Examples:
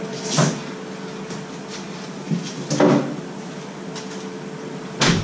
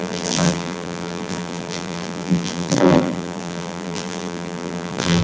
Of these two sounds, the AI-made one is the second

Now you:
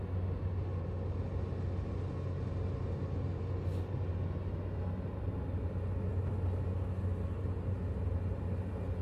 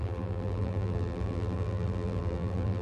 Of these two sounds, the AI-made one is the second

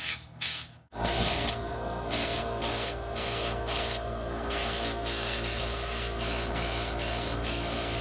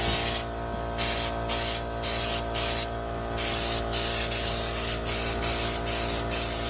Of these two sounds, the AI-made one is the first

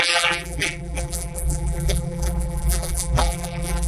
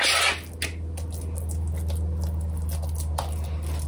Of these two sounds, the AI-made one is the first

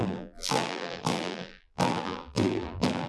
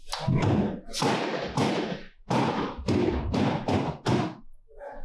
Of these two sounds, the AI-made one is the first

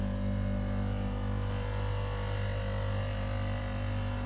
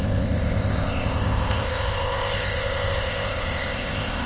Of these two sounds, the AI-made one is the second